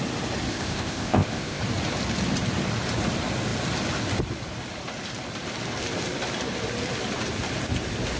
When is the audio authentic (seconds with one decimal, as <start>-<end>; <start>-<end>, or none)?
0.0-0.5; 1.6-8.2